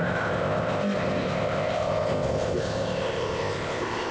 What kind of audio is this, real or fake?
fake